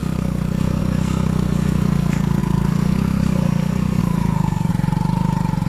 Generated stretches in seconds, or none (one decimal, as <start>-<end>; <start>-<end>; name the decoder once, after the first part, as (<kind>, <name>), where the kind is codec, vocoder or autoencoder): 0.0-4.7 (codec, SNAC)